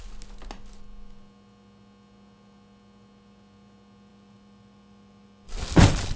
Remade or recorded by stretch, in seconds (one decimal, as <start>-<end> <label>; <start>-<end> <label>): 0.0-4.1 recorded; 4.1-6.2 remade